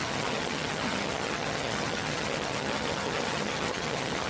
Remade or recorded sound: remade